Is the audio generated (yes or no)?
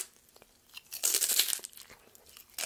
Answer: no